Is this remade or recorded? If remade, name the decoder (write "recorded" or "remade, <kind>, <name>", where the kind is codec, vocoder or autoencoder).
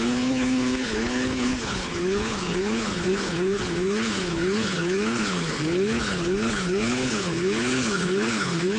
remade, codec, HILCodec